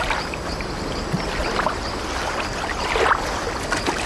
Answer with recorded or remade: recorded